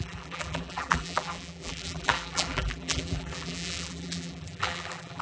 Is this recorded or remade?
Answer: remade